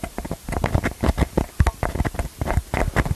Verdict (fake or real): real